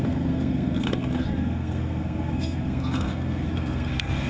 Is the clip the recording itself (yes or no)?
no